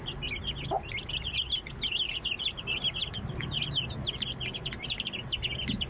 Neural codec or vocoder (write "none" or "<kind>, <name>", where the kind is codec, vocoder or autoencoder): none